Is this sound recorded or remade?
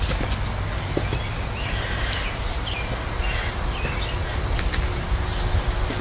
recorded